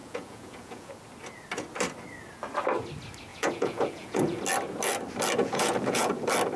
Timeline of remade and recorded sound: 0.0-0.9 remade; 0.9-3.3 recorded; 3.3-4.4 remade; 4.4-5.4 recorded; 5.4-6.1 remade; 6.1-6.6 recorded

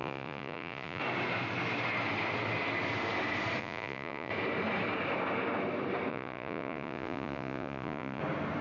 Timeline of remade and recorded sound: 0.0-1.0 remade; 1.0-3.6 recorded; 3.6-4.3 remade; 4.3-6.1 recorded; 6.1-8.2 remade; 8.2-8.6 recorded

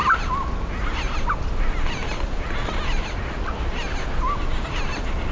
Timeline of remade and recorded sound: 0.0-5.3 recorded

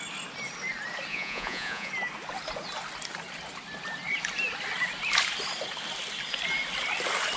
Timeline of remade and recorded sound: 0.0-1.1 recorded; 1.1-1.9 remade; 1.9-7.4 recorded

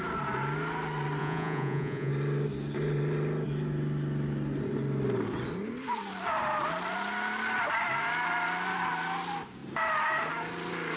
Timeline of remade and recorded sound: 0.0-1.2 recorded; 1.2-2.1 remade; 2.1-11.0 recorded

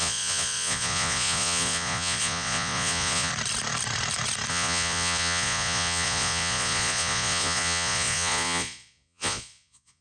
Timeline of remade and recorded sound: 0.0-3.3 remade; 3.3-4.5 recorded; 4.5-10.0 remade

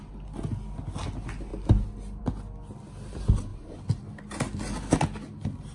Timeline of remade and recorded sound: 0.0-5.7 recorded